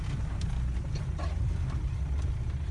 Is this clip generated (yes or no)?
no